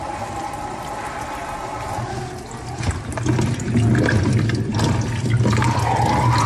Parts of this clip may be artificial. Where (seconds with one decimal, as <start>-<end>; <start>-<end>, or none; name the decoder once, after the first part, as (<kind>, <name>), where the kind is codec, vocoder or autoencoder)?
none

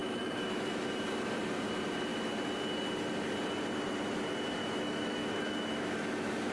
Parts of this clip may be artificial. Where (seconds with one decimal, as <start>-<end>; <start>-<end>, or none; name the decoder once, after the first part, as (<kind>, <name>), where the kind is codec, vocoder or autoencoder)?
0.0-0.9 (autoencoder, DAC-VAE); 4.6-6.5

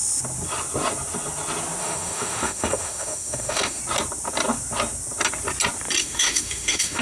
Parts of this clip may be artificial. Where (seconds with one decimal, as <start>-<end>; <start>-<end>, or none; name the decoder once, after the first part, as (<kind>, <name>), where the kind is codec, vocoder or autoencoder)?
1.8-3.8 (autoencoder, DAC-VAE); 6.0-7.0

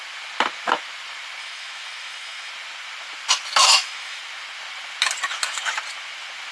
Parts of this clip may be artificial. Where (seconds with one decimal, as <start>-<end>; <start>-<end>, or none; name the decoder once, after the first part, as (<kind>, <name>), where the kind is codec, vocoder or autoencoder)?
1.4-2.5 (autoencoder, DAC-VAE); 3.6-4.2

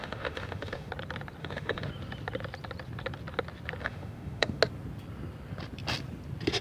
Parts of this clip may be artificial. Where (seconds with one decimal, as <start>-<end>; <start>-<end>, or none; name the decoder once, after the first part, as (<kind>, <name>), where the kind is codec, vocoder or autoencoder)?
0.0-0.9 (autoencoder, DAC-VAE); 1.4-1.9; 3.8-4.6

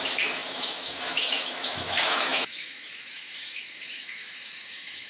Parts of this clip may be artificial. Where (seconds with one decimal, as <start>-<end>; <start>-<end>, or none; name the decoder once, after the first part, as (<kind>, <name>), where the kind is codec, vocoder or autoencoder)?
0.0-5.1 (autoencoder, DAC-VAE)